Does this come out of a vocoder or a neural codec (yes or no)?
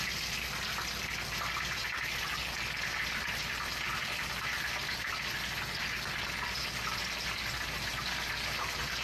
no